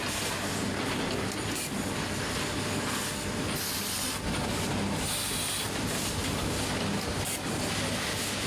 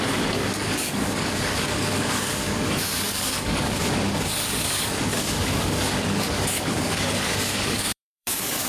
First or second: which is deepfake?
second